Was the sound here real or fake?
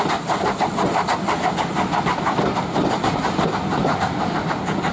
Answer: real